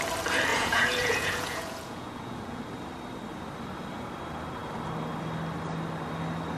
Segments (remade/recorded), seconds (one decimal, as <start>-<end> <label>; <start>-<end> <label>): 0.0-0.5 recorded; 0.5-2.6 remade; 2.6-6.6 recorded

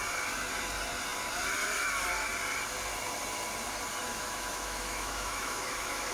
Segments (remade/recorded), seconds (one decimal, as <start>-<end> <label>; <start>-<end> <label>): 0.0-4.1 recorded; 4.1-6.1 remade

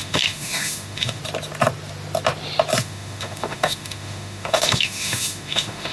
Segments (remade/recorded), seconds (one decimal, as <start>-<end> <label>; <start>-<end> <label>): 0.0-1.2 remade; 1.2-2.8 recorded; 2.8-5.9 remade

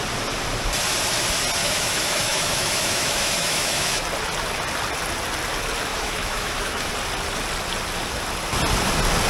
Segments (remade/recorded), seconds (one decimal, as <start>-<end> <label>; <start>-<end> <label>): 0.0-1.6 recorded; 1.6-4.0 remade; 4.0-5.9 recorded; 5.9-6.9 remade; 6.9-9.3 recorded

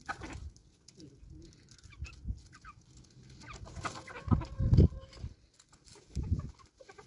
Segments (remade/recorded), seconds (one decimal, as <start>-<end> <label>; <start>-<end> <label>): 0.0-7.1 recorded

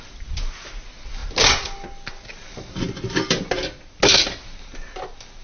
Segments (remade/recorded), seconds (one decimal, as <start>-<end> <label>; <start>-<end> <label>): 0.0-5.4 recorded

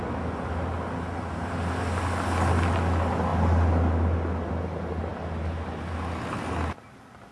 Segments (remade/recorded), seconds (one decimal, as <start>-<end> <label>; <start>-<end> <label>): 0.0-7.3 recorded